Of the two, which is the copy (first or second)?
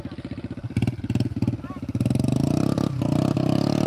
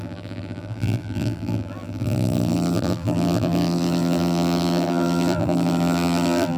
second